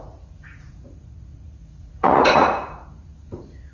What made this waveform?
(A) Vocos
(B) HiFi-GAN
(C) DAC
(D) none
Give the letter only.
A